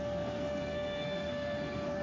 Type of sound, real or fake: fake